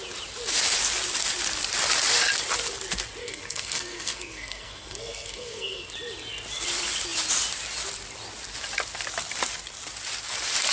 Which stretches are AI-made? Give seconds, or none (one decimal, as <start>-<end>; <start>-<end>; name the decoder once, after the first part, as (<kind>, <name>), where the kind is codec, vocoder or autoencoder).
3.2-5.9 (codec, SNAC)